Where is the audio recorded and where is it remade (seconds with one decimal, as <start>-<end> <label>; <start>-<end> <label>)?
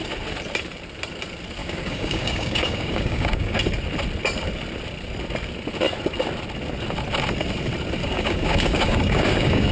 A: 0.0-1.6 recorded; 1.6-3.6 remade; 3.6-8.0 recorded; 8.0-9.7 remade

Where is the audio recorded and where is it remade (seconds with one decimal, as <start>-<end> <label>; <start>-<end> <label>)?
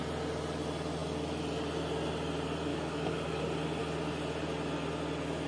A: 0.0-2.7 recorded; 2.7-3.4 remade; 3.4-5.5 recorded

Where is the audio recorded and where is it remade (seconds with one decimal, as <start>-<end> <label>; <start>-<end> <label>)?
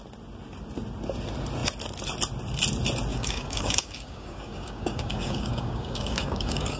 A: 0.0-3.1 recorded; 3.1-6.8 remade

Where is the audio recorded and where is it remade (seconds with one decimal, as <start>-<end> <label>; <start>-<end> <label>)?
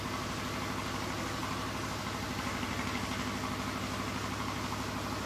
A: 0.0-5.3 recorded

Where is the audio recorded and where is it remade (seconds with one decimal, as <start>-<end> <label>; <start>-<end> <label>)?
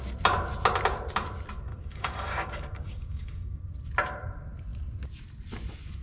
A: 0.0-1.7 recorded; 1.7-3.6 remade; 3.6-6.0 recorded